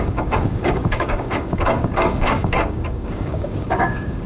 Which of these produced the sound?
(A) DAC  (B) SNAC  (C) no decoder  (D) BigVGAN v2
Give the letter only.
A